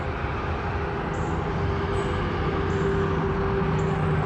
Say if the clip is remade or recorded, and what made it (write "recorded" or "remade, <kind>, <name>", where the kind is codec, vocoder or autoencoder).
recorded